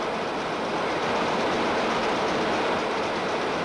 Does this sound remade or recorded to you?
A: recorded